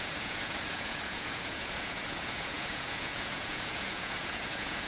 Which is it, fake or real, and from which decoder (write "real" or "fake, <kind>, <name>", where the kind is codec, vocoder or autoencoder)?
fake, vocoder, Vocos